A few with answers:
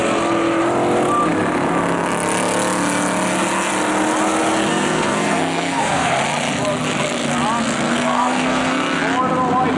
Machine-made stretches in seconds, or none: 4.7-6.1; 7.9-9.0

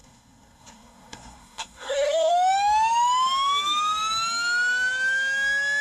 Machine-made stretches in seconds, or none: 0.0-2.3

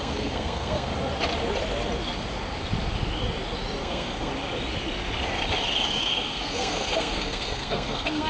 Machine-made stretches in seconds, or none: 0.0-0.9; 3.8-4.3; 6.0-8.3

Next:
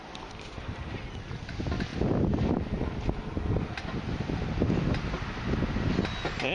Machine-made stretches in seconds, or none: none

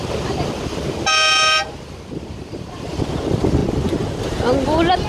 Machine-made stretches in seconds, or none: none